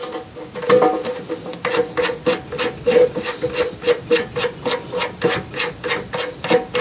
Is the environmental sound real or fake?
real